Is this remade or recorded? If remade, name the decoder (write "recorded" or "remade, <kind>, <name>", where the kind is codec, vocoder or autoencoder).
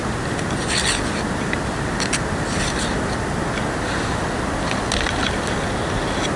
recorded